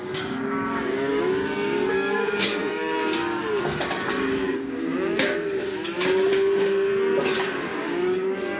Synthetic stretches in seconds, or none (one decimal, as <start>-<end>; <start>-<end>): 0.0-6.9; 7.4-8.6

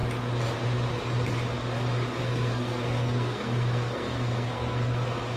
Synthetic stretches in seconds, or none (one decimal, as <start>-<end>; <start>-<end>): 2.2-5.4

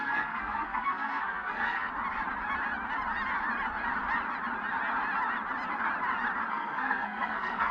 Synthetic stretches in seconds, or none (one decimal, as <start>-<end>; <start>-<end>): 0.0-1.9; 6.5-7.7